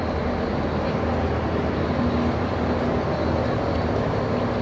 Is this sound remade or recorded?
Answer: recorded